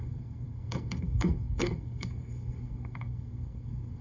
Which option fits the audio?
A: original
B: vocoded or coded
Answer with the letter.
B